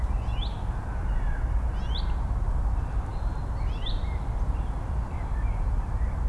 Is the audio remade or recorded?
recorded